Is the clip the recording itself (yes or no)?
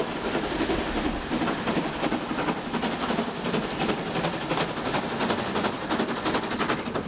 yes